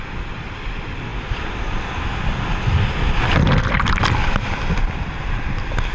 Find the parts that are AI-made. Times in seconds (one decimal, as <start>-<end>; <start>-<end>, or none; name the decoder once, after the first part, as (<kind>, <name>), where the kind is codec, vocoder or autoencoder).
none